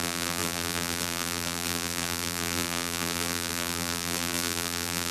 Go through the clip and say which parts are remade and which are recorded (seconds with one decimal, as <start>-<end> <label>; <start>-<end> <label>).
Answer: 0.0-5.1 remade